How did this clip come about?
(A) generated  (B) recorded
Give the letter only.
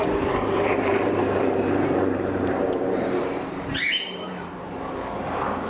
A